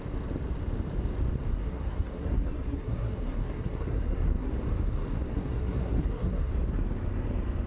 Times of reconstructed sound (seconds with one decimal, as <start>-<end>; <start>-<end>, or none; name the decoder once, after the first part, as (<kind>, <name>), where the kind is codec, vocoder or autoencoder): 1.5-4.5 (codec, SNAC); 5.3-6.5